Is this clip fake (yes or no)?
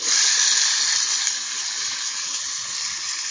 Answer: no